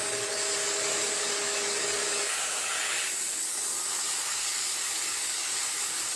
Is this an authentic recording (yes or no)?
no